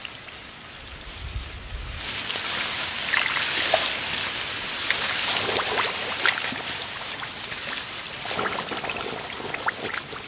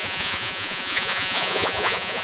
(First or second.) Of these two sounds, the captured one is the first